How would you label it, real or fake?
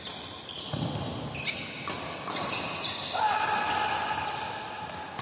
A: real